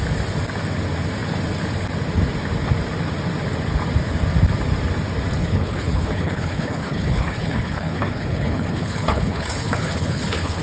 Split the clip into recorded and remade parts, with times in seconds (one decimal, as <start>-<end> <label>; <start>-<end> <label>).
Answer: 0.0-5.4 recorded; 5.4-10.6 remade